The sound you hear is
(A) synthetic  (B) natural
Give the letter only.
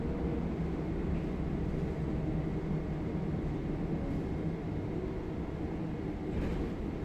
B